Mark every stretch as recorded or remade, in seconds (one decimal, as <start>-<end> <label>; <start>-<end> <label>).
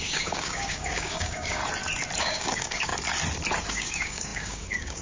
0.0-1.6 remade; 1.6-2.2 recorded; 2.2-2.9 remade; 2.9-3.7 recorded; 3.7-5.0 remade